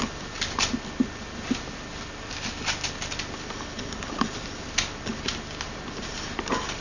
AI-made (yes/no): no